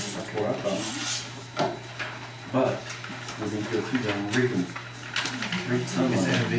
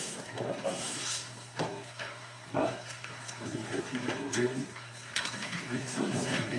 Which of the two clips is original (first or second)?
first